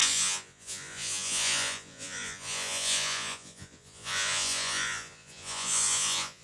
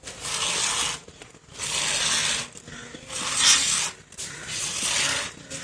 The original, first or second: second